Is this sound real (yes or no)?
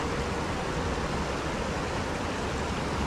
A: yes